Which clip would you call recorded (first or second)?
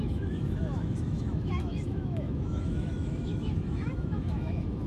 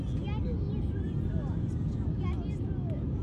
second